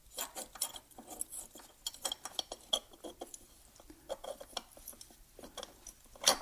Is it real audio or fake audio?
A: real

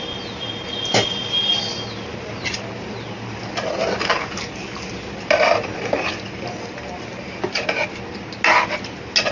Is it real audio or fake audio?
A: real